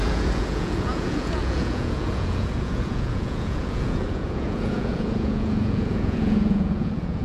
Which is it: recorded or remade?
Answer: remade